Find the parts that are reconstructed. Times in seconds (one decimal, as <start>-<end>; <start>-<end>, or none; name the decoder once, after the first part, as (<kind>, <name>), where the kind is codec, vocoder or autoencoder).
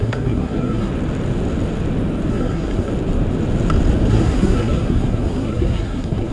0.0-0.9 (codec, SNAC); 2.3-2.9; 4.1-6.3